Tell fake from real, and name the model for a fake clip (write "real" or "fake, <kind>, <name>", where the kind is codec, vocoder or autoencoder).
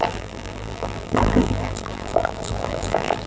fake, vocoder, BigVGAN v2